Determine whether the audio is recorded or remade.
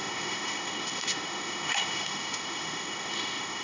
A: remade